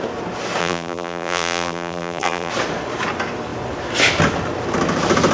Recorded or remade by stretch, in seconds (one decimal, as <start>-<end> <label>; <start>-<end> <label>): 0.0-0.6 recorded; 0.6-2.5 remade; 2.5-5.3 recorded